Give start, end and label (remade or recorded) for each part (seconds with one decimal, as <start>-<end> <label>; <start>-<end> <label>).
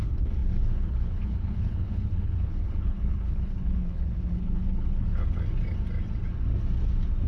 0.0-5.1 remade; 5.1-7.3 recorded